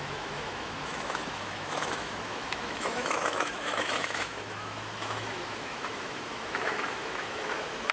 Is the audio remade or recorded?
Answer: remade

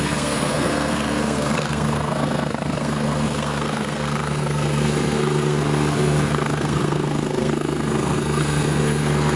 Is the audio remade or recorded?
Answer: remade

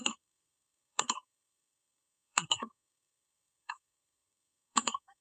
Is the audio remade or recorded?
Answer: remade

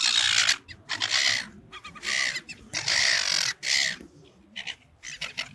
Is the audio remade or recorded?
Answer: recorded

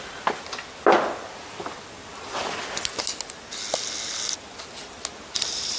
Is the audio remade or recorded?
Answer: recorded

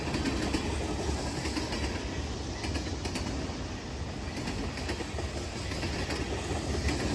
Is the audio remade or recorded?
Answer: recorded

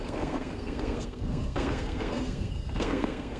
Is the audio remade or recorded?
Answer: remade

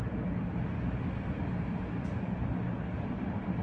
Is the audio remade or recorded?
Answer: recorded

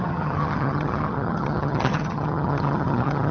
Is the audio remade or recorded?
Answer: remade